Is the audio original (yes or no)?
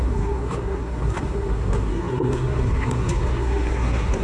no